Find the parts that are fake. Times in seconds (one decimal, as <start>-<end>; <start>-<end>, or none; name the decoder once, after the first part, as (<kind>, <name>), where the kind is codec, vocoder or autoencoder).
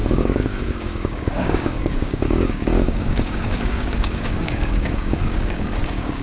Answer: 0.0-6.2 (codec, DAC)